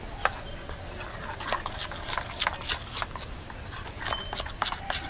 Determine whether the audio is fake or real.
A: real